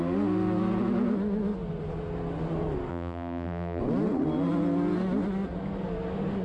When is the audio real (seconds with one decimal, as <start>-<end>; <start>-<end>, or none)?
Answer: 0.0-2.9; 3.8-6.4